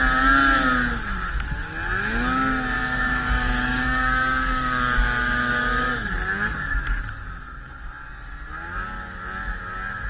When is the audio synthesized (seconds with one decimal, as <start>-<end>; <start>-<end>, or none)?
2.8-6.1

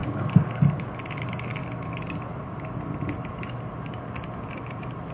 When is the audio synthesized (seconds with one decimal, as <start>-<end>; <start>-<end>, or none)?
0.0-0.9

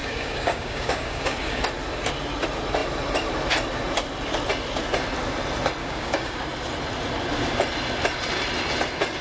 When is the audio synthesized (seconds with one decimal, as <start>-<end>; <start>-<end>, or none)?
0.0-1.6; 5.8-6.4

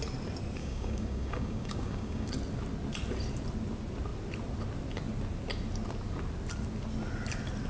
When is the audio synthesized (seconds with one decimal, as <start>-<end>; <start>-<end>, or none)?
0.6-2.3

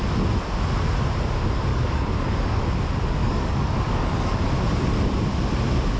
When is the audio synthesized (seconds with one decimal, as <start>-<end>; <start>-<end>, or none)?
1.7-2.6; 3.2-4.4

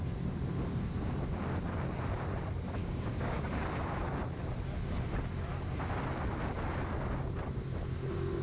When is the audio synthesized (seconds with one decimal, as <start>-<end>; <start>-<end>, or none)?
2.8-3.6